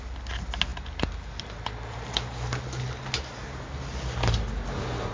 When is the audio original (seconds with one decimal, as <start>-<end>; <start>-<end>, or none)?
0.0-5.1